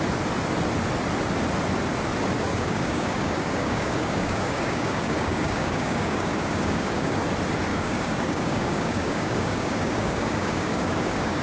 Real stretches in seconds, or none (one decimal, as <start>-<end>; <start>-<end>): 0.0-2.5; 7.2-7.7